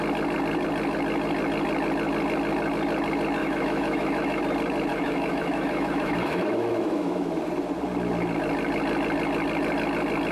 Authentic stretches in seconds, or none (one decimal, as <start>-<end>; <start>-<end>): 0.0-3.4; 4.4-4.9; 7.3-10.3